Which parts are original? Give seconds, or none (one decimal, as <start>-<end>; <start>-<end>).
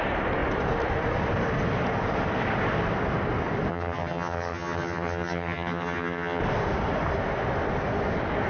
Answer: 0.0-3.7; 6.4-8.5